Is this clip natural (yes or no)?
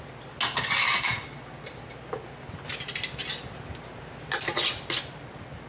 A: yes